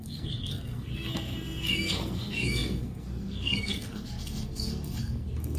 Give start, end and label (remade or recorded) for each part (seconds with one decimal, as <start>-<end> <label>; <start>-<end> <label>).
0.0-5.6 remade